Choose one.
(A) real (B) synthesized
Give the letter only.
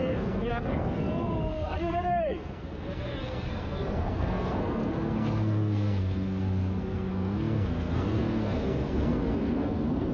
B